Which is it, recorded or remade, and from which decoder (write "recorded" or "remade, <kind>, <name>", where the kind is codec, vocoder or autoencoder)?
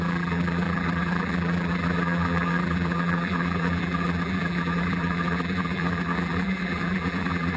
remade, vocoder, BigVGAN v2